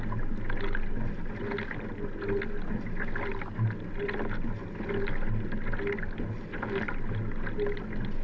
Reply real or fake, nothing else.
real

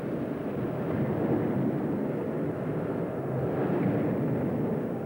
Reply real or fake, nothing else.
real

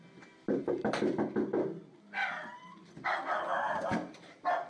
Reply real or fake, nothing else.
real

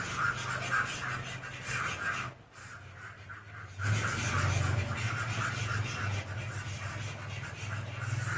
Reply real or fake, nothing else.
real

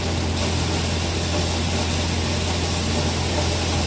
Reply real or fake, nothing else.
real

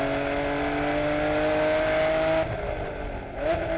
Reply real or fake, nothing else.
real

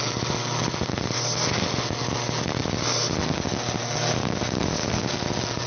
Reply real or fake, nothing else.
real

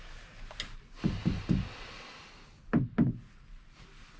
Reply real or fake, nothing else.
real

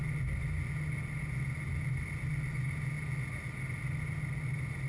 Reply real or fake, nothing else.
real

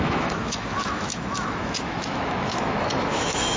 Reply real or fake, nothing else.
fake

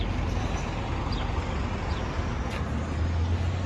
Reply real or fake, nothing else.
real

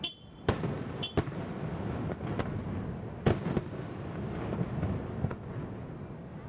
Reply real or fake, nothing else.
real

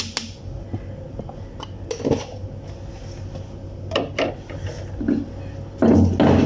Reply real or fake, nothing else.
real